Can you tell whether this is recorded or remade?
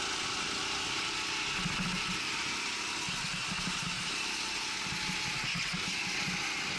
recorded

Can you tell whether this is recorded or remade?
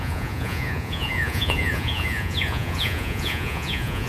remade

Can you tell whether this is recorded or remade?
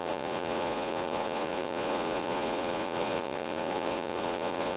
remade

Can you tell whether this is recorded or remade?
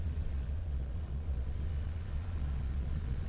remade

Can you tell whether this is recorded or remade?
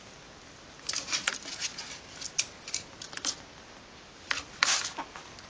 recorded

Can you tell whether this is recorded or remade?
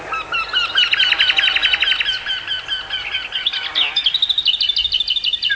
recorded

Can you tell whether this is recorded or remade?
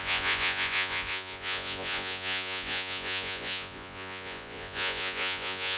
remade